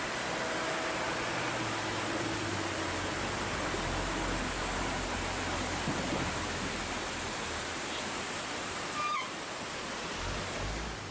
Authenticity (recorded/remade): recorded